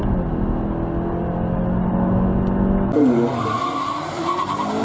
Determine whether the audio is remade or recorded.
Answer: recorded